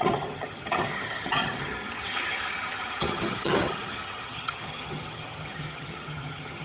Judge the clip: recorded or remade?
remade